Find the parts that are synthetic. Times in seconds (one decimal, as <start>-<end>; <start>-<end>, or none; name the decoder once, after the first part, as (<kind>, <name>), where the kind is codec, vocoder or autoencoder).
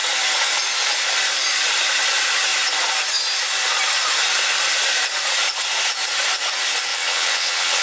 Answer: 6.9-7.8 (vocoder, WaveNeXt)